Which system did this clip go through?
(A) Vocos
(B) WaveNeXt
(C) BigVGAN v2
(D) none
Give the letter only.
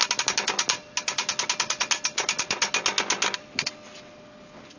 D